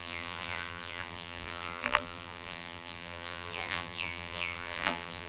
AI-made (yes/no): yes